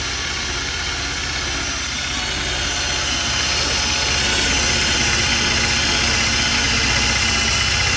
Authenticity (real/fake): real